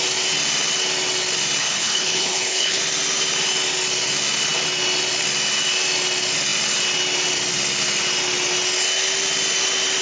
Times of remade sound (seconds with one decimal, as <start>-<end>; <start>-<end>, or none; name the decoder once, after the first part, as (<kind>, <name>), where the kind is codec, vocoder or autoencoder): 1.6-2.8 (codec, HILCodec)